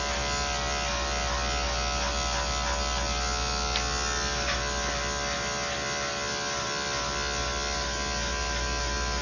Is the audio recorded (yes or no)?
yes